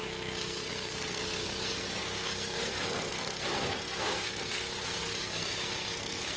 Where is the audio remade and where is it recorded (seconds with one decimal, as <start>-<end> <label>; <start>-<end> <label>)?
0.0-6.4 remade